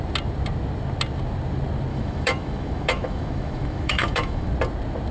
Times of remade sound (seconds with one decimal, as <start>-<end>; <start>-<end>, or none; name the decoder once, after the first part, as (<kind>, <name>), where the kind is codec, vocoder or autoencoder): 1.9-4.5 (autoencoder, DAC-VAE)